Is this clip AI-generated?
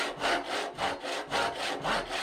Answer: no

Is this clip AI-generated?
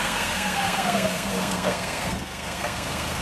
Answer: yes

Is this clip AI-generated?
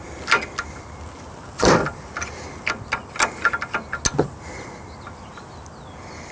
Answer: no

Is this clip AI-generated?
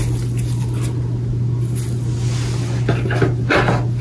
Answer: no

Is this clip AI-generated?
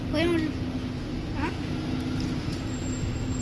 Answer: no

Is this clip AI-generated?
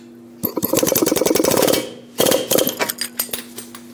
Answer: no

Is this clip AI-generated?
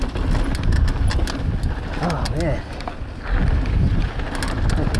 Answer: no